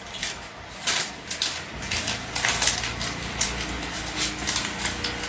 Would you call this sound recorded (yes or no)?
yes